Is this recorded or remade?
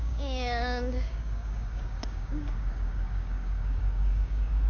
remade